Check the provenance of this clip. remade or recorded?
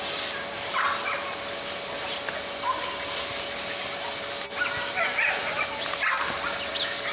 recorded